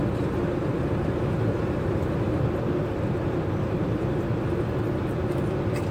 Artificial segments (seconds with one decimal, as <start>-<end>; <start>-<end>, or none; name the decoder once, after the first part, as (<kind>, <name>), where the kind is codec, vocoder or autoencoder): 0.7-4.2 (vocoder, BigVGAN v2)

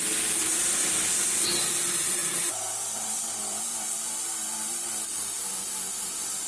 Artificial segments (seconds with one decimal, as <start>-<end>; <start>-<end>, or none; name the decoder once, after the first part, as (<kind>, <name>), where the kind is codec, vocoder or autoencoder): 0.0-0.8 (vocoder, BigVGAN v2); 1.3-2.2; 3.0-6.5

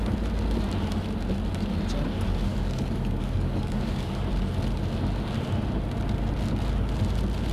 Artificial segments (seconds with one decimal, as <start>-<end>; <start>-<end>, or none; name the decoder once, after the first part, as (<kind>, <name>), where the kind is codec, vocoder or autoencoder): 2.5-4.3 (codec, DAC)